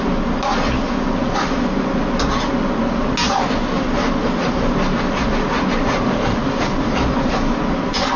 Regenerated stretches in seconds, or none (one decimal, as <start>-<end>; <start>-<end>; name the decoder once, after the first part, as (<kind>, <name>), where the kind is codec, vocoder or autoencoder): none